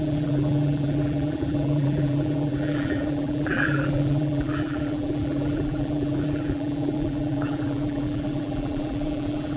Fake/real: fake